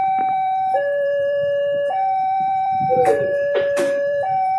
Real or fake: fake